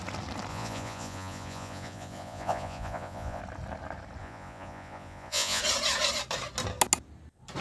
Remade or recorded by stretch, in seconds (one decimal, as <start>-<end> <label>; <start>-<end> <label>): 0.0-0.5 recorded; 0.5-3.4 remade; 3.4-4.2 recorded; 4.2-5.6 remade; 5.6-7.6 recorded